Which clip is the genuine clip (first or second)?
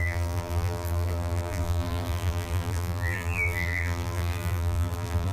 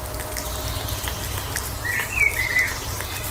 second